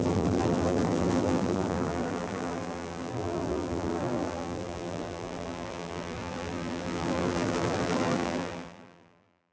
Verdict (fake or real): fake